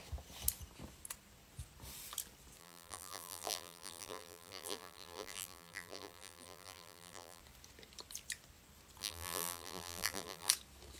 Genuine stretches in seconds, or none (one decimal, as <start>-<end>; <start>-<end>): 0.0-2.6; 7.4-9.0; 10.5-11.0